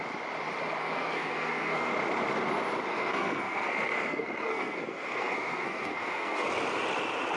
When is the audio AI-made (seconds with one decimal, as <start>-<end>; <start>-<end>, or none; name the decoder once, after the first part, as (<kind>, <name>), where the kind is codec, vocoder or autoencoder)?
0.8-1.9 (codec, SNAC); 2.9-6.5